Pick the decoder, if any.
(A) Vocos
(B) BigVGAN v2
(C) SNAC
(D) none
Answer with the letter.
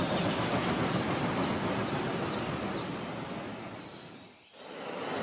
D